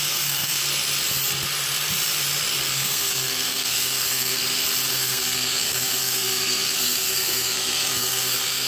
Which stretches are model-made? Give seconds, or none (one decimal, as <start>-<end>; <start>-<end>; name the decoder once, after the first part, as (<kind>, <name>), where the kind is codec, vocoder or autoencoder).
0.0-0.6 (codec, SNAC); 2.7-4.4; 4.9-8.7